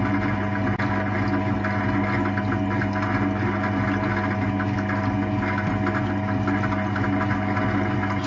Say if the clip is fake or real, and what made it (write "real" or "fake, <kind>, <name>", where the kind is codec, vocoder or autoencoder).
real